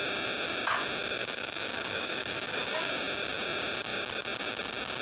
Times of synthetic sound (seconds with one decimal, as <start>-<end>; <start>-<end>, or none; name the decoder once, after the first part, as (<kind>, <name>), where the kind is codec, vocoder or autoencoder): 1.2-2.9 (codec, DAC)